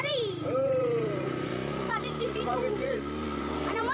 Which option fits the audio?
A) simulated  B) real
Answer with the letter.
A